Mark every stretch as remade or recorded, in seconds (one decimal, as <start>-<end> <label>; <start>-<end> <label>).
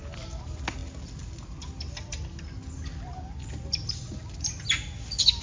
0.0-5.4 recorded